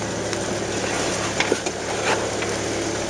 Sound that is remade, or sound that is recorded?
recorded